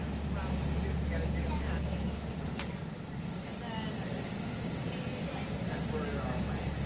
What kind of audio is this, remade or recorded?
recorded